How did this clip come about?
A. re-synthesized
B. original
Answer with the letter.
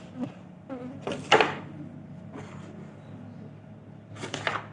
A